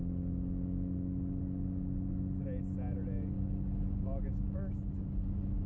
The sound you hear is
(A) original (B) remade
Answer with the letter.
A